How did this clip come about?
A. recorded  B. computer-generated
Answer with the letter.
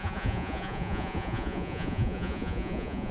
B